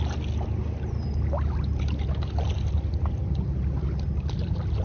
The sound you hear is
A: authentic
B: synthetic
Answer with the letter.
A